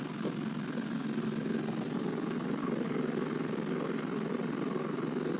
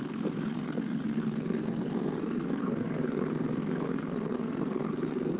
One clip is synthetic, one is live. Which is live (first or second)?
first